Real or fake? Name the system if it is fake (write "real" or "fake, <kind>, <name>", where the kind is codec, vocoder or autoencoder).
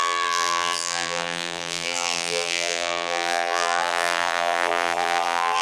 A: fake, vocoder, BigVGAN v2